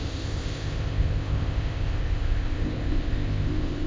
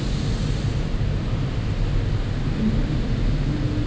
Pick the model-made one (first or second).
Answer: first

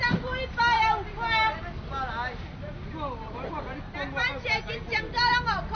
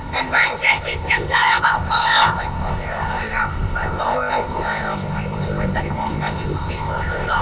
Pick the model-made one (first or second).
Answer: second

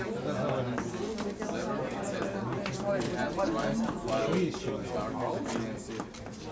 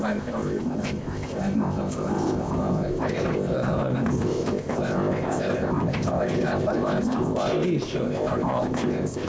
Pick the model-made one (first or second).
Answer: second